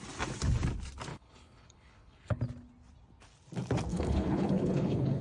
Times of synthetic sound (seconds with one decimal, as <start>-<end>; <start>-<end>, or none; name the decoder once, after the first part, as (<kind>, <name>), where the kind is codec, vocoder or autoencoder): 1.1-2.4 (codec, HILCodec); 3.9-5.2